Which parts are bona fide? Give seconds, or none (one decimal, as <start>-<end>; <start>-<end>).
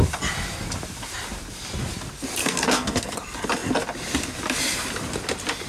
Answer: 0.0-2.4; 3.1-5.7